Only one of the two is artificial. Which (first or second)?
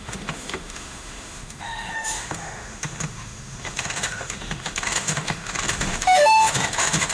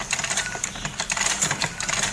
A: first